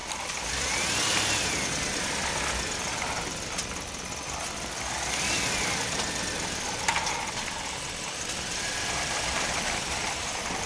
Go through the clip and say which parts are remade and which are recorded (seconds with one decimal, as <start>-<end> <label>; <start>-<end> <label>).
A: 0.0-5.2 recorded; 5.2-10.7 remade